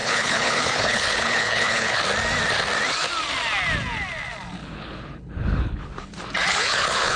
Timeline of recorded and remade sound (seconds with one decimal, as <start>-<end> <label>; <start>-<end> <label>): 0.0-2.0 remade; 2.0-4.6 recorded; 4.6-6.1 remade; 6.1-6.5 recorded; 6.5-7.2 remade